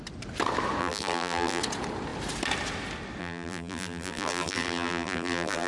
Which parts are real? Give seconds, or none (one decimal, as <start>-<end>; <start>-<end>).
0.0-0.8; 1.6-3.2